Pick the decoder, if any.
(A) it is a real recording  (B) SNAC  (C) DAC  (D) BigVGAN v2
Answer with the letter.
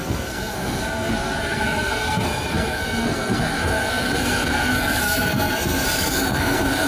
B